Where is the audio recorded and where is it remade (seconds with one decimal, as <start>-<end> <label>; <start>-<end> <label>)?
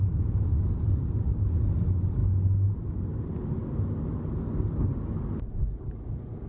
0.0-6.5 recorded